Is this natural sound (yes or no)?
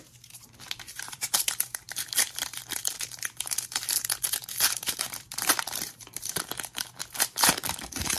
no